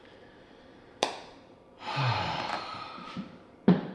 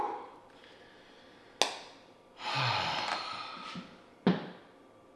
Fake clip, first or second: first